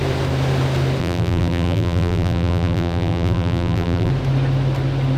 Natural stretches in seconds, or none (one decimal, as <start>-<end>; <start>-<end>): 0.0-1.0; 4.1-5.2